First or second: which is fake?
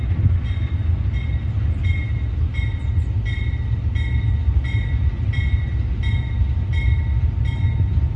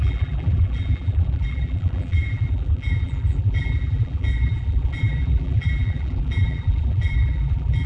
second